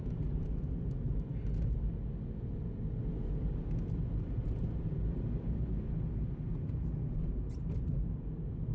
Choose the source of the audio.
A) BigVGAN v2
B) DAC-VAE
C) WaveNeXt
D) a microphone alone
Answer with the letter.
D